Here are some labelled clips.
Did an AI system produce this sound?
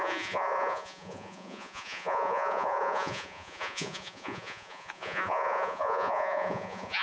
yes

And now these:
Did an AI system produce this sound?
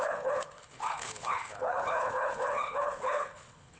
yes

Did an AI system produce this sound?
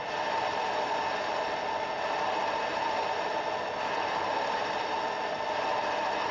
no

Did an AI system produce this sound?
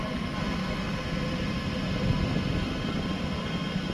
no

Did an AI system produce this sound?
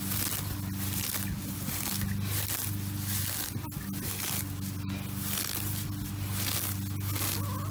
no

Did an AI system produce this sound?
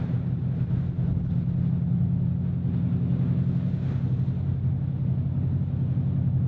no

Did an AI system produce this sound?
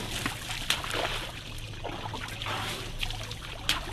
no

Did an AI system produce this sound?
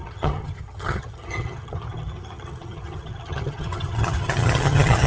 yes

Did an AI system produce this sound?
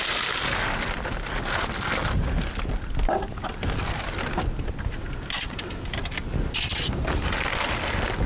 no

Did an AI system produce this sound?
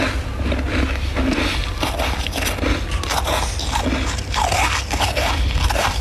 no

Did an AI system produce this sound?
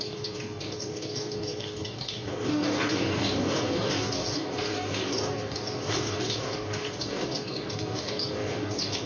yes